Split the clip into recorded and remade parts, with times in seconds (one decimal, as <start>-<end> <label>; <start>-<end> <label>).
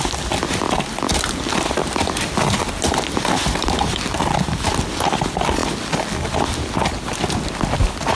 0.0-8.1 recorded